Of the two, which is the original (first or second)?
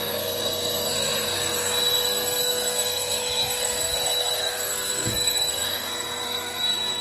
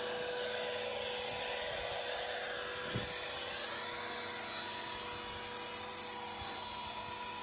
second